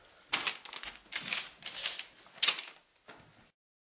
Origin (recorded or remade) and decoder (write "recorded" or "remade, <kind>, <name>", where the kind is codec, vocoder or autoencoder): recorded